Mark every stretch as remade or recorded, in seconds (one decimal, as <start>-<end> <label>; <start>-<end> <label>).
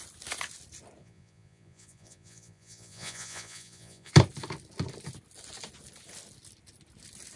0.0-1.0 recorded; 1.0-4.1 remade; 4.1-7.4 recorded